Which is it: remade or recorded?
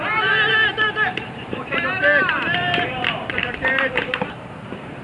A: remade